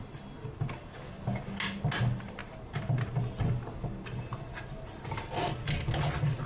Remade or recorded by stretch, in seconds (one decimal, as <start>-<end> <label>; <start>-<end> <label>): 0.0-6.5 recorded